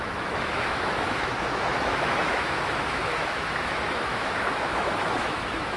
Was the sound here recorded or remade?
remade